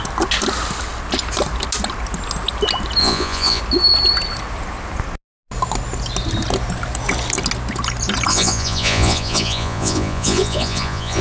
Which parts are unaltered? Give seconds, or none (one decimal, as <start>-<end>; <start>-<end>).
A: 0.0-3.0; 3.6-8.3